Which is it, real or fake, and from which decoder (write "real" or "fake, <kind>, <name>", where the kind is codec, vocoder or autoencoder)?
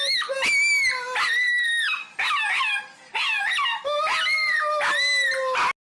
real